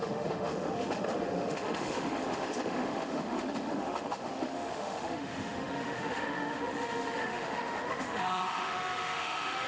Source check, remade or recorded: remade